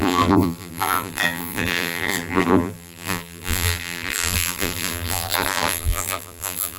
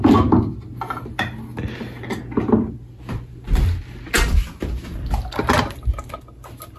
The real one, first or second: second